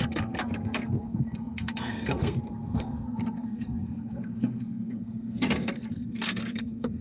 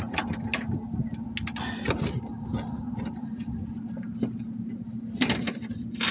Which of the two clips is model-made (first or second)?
first